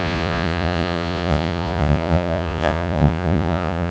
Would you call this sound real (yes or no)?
no